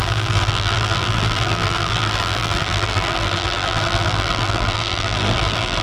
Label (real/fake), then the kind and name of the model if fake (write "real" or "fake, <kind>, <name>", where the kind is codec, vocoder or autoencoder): fake, vocoder, BigVGAN v2